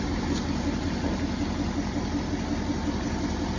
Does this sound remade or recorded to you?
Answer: recorded